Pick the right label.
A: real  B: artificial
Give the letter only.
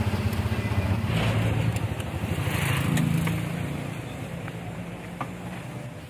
A